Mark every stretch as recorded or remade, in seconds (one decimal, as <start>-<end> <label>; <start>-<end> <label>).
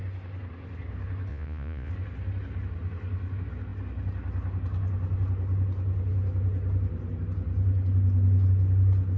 0.0-1.3 recorded; 1.3-1.9 remade; 1.9-9.2 recorded